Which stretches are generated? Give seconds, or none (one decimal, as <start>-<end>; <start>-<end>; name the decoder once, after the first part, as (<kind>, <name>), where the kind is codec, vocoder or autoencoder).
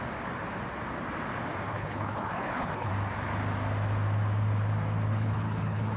1.7-2.9 (codec, HILCodec); 5.1-6.0